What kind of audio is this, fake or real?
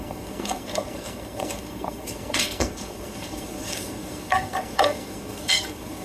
fake